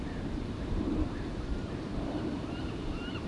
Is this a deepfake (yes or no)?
yes